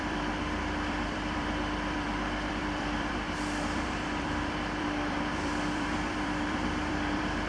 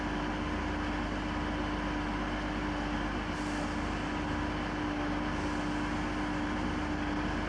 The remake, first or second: first